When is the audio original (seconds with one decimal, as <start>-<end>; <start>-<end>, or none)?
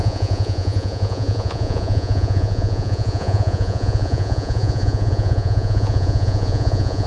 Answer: none